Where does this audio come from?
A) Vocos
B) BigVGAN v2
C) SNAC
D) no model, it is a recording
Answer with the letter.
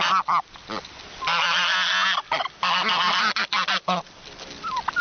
D